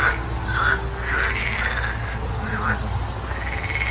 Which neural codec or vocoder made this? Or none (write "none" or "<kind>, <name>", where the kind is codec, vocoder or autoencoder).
none